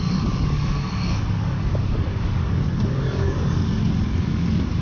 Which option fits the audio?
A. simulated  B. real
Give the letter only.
A